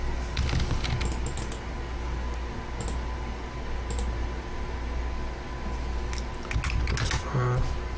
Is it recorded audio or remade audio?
recorded